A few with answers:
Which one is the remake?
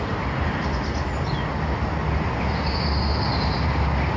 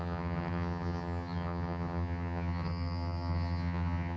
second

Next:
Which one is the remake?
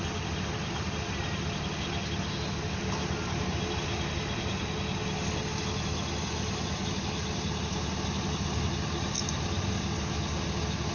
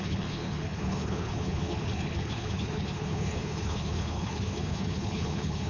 second